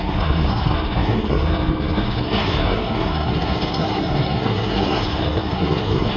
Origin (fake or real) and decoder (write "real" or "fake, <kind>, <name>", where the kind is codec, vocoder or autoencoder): fake, codec, SNAC